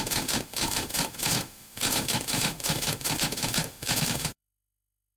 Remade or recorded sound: remade